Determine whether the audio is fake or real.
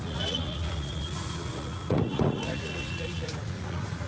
fake